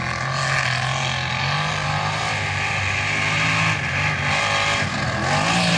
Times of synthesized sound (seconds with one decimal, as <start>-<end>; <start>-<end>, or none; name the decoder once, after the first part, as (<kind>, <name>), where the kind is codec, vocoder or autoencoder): none

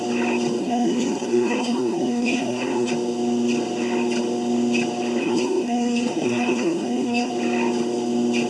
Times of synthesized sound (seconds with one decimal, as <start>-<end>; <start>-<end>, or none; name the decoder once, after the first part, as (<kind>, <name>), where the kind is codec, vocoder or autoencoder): 0.6-2.9 (codec, SNAC); 5.2-7.3

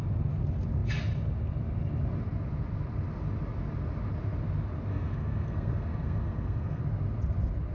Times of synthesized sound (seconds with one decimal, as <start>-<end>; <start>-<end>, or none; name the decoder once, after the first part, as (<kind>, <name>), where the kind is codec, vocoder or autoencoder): 4.9-6.8 (codec, SNAC)

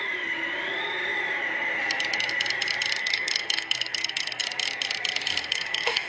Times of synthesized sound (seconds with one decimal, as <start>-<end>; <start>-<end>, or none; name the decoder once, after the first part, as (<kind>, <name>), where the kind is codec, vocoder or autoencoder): 3.0-4.4 (codec, SNAC); 5.4-6.1

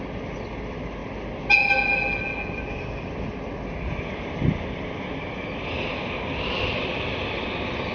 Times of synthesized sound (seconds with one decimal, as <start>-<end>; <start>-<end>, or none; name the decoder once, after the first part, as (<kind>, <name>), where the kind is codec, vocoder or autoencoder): none